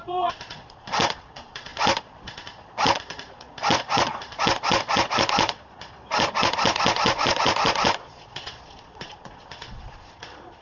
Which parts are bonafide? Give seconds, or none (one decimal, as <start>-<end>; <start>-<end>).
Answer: none

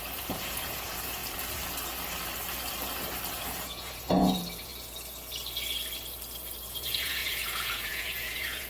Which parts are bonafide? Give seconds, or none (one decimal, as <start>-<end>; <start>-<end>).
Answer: 1.2-3.3; 4.7-6.7